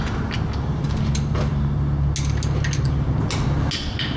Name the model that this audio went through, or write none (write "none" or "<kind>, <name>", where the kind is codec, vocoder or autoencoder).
none